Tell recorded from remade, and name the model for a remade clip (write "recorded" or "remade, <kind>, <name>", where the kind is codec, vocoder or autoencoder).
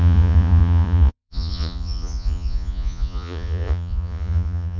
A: remade, vocoder, Vocos